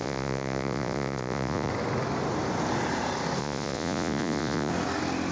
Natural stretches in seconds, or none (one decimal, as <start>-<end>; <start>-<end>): 1.7-3.4; 4.7-5.3